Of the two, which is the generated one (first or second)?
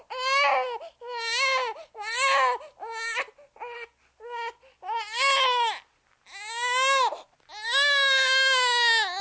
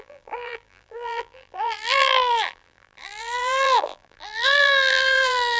second